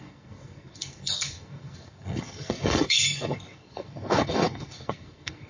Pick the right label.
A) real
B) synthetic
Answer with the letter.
B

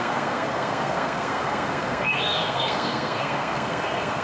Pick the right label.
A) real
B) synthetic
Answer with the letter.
B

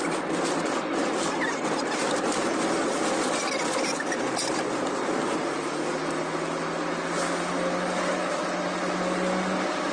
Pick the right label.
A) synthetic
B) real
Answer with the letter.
B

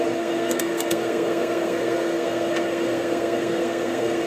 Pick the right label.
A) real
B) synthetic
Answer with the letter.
B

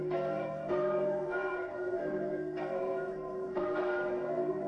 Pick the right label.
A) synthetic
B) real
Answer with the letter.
A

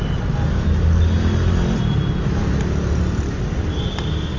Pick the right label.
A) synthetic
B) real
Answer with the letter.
B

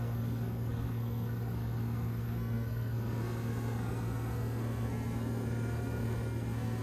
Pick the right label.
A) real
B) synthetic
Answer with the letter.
B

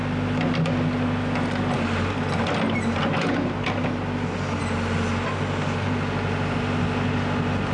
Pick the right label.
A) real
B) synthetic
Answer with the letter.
A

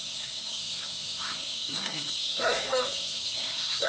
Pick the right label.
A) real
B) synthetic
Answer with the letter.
B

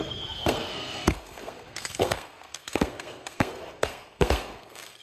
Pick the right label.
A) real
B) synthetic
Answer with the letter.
B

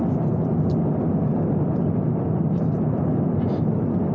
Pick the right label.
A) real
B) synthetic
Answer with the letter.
A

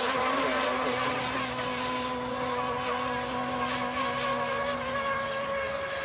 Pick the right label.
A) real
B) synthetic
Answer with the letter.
A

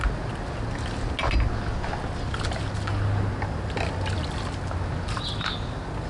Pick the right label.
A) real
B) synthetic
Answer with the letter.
A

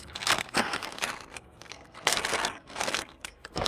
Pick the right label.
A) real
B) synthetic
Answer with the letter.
B